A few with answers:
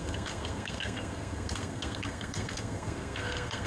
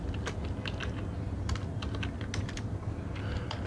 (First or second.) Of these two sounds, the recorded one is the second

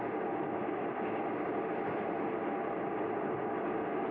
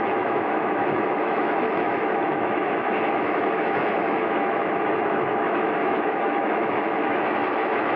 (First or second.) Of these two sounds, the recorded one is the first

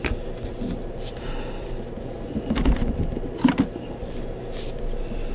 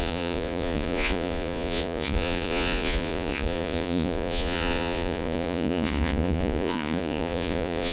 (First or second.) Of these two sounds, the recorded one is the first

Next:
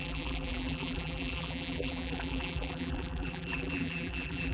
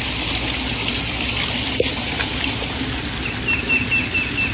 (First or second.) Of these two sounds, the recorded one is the second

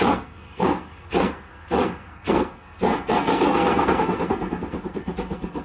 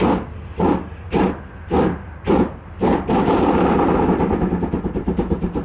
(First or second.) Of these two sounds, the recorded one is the second